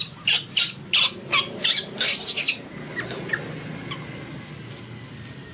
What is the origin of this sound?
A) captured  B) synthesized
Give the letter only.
A